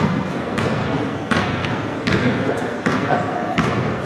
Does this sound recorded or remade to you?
remade